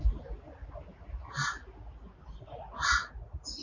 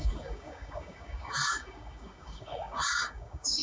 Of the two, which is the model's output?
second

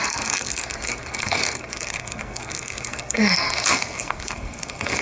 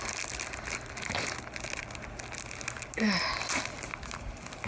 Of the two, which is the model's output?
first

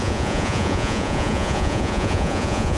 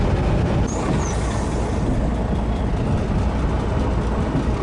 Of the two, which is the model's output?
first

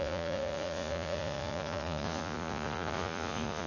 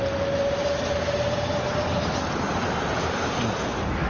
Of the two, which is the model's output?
first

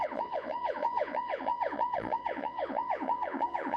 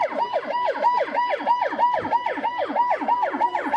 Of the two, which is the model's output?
first